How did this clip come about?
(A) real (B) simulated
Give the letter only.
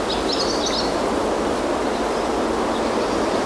A